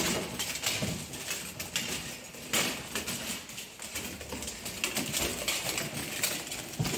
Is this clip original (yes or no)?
yes